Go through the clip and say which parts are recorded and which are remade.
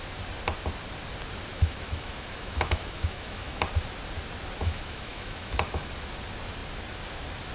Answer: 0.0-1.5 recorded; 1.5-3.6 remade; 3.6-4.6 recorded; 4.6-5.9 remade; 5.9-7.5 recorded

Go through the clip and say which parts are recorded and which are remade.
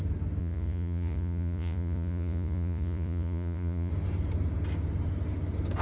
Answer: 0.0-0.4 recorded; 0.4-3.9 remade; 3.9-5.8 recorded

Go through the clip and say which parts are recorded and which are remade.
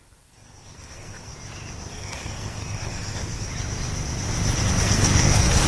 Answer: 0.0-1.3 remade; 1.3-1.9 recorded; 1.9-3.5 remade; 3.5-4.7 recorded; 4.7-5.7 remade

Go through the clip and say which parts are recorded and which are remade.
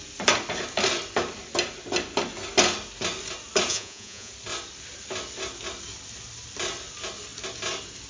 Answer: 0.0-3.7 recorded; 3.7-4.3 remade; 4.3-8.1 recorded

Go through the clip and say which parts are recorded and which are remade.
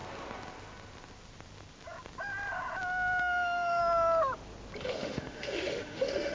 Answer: 0.0-3.2 recorded; 3.2-3.8 remade; 3.8-4.8 recorded; 4.8-6.3 remade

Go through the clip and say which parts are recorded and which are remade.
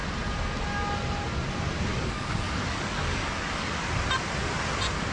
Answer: 0.0-1.9 recorded; 1.9-3.8 remade; 3.8-5.1 recorded